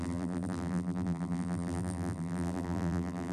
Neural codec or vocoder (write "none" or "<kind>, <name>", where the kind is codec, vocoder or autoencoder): vocoder, BigVGAN v2